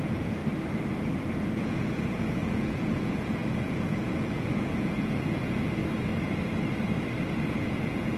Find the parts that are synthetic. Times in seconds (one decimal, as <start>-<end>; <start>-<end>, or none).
0.0-0.4; 1.3-5.8; 7.3-8.2

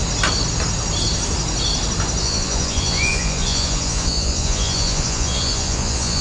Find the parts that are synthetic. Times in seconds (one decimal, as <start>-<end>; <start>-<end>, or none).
2.2-6.2

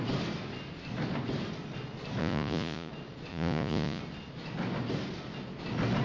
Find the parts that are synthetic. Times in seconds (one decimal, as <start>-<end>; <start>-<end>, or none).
2.2-2.9; 3.3-4.0

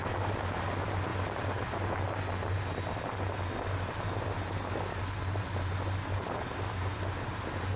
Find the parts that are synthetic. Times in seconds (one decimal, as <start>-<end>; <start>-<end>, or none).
none

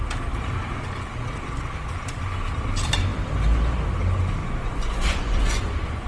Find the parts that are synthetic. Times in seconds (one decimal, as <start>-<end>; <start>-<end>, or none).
4.4-6.1

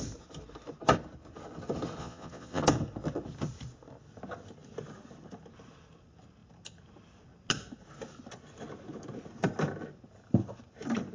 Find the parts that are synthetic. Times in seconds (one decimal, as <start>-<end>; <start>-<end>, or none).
2.0-2.6